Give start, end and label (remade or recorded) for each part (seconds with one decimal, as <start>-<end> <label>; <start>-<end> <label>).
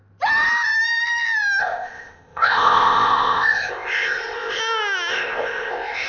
0.0-1.6 recorded; 1.6-4.6 remade; 4.6-5.1 recorded; 5.1-6.1 remade